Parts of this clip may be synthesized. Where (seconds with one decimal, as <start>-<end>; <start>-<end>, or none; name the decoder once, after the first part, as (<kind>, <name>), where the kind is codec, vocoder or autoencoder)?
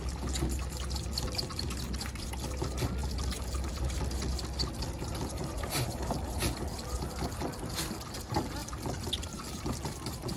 none